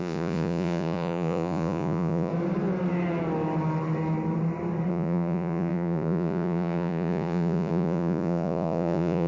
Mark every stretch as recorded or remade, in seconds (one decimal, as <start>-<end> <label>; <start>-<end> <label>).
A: 0.0-2.3 remade; 2.3-4.9 recorded; 4.9-9.3 remade